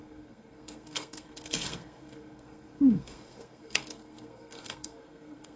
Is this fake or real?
fake